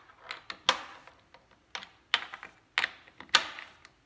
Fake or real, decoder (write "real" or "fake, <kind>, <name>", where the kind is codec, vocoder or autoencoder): real